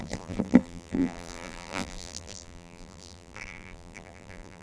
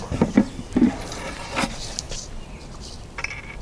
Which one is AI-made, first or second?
first